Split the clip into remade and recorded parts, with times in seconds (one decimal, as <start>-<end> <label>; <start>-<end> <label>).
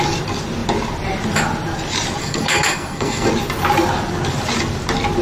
0.0-2.2 recorded; 2.2-3.3 remade; 3.3-5.2 recorded